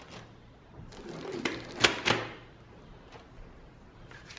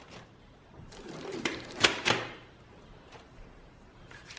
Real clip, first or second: first